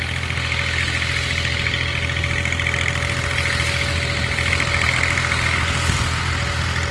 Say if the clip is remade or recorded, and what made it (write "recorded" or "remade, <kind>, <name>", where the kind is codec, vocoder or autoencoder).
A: recorded